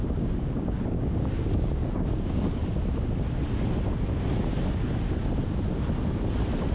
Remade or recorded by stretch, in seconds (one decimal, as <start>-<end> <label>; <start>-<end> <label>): 0.0-2.6 remade; 2.6-6.7 recorded